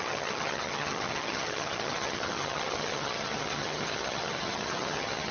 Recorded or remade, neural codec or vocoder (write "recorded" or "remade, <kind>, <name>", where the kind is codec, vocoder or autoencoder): remade, vocoder, HiFi-GAN